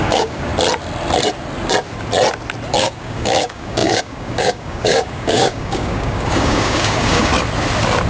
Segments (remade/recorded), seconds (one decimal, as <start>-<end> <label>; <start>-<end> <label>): 0.0-0.5 remade; 0.5-2.8 recorded; 2.8-7.3 remade; 7.3-8.1 recorded